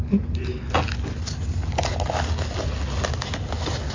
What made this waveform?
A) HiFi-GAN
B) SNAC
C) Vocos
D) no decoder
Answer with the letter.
D